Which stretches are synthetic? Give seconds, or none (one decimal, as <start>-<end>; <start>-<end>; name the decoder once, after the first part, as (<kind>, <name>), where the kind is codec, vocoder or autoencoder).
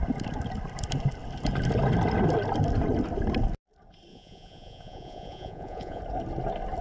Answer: 4.1-6.0 (vocoder, Vocos)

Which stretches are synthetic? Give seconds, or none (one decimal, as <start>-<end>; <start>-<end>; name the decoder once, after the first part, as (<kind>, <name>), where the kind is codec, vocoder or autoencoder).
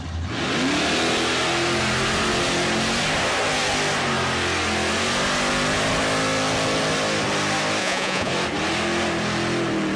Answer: 7.8-8.3 (vocoder, Vocos)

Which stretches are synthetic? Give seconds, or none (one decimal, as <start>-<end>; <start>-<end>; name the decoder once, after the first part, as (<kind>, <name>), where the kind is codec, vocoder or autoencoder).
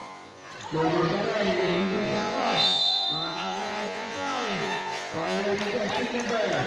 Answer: 0.0-0.5 (vocoder, Vocos); 1.6-5.4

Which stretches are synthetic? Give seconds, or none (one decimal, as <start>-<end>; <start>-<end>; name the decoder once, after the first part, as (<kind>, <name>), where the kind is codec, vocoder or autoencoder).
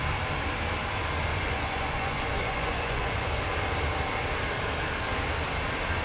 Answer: 1.3-3.4 (vocoder, Vocos)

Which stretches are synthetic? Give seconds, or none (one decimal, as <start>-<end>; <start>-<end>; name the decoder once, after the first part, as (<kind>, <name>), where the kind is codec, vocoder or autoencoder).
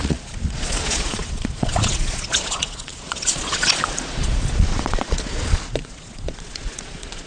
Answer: 0.0-7.3 (vocoder, Vocos)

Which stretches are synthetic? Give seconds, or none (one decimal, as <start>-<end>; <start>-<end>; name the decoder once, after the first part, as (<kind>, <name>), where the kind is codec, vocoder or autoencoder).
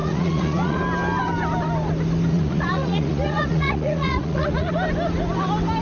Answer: 0.0-0.8 (vocoder, Vocos); 2.3-4.7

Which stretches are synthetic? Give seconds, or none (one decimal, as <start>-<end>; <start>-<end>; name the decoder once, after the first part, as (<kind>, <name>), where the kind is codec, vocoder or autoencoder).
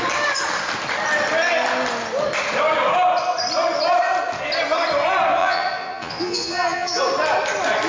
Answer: 5.4-7.0 (vocoder, Vocos)